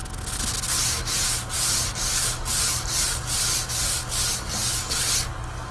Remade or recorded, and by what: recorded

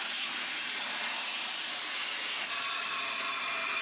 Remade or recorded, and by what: remade, vocoder, BigVGAN v2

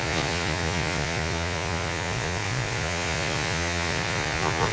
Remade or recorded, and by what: remade, vocoder, Vocos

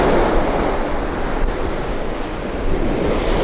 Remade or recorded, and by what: recorded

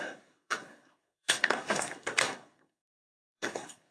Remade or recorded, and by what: remade, codec, SNAC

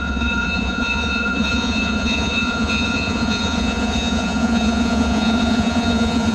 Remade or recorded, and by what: remade, vocoder, Vocos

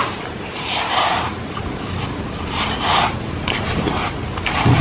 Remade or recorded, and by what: recorded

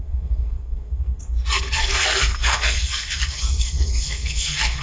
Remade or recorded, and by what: remade, codec, SNAC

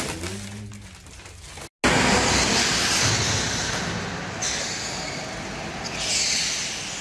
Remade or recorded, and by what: recorded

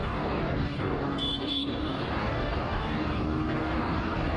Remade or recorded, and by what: remade, codec, DAC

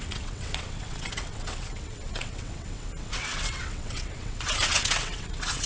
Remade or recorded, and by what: remade, vocoder, WaveNeXt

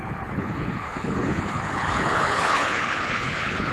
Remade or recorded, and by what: remade, codec, HILCodec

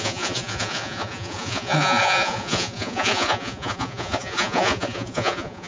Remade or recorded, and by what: remade, vocoder, Vocos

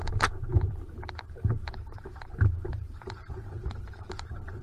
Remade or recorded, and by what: remade, vocoder, BigVGAN v2